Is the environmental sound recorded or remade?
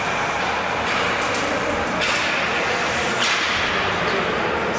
recorded